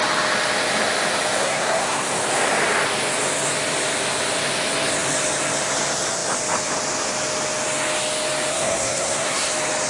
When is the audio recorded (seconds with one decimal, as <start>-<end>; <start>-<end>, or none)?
0.0-1.4; 2.1-8.5; 9.5-9.9